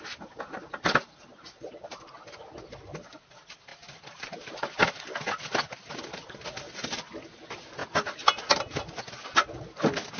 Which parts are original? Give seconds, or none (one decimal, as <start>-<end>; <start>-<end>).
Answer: 0.0-10.2